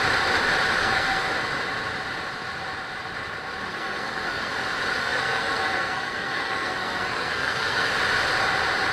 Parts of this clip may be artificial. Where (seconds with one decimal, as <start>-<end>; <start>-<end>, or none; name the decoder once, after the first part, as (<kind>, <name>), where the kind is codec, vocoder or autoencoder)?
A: 0.8-1.3 (codec, SNAC); 3.7-4.5; 5.0-7.9